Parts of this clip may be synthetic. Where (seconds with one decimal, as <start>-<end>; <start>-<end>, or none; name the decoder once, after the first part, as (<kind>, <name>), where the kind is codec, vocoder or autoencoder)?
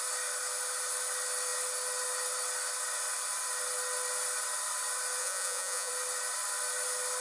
5.2-5.9 (vocoder, Vocos)